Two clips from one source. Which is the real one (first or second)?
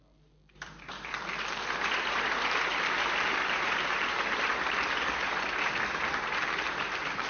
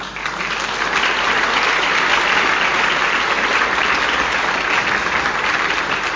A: second